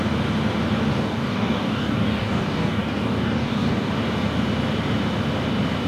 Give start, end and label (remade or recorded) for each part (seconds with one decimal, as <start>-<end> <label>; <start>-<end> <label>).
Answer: 0.0-0.9 recorded; 0.9-3.9 remade; 3.9-5.9 recorded